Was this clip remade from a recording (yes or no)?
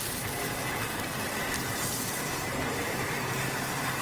no